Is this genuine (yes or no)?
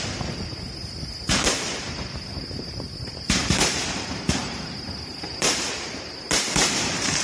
no